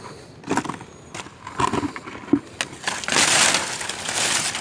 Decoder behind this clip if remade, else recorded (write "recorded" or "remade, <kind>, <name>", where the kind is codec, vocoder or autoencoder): recorded